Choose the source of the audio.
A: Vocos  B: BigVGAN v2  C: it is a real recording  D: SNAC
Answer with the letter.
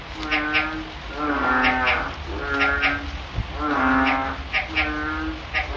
C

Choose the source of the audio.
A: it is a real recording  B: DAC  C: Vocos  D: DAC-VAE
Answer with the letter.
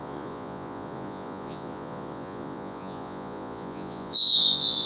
C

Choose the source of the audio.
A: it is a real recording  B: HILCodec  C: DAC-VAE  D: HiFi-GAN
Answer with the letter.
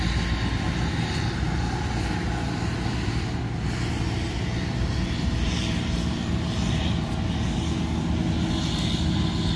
A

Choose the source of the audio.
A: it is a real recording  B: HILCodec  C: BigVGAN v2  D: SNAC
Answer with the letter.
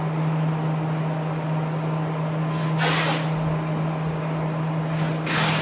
A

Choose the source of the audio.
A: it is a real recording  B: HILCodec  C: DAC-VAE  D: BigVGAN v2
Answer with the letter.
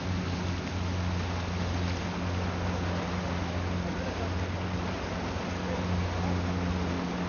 A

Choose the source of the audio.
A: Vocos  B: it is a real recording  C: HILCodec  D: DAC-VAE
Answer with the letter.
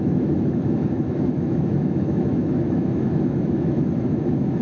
D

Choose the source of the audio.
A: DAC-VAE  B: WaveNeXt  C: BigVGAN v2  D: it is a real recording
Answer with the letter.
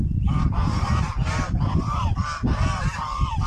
C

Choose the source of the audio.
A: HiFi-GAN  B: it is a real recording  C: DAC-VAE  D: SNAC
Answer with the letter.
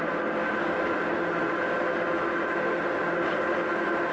B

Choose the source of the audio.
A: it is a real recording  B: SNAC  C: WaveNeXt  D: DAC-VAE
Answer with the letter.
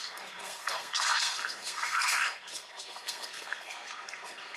B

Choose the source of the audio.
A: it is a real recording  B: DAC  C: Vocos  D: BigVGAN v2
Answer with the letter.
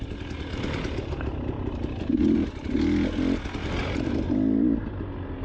A